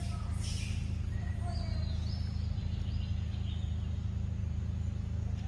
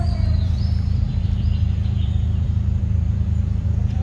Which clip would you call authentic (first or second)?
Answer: first